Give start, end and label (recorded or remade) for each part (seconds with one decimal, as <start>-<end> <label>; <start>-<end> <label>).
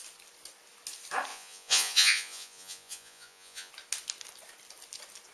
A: 0.0-1.3 recorded; 1.3-3.7 remade; 3.7-5.3 recorded